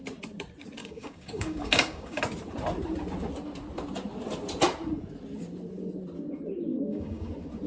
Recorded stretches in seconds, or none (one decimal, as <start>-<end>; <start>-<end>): 0.0-0.8; 2.2-6.7; 7.3-7.7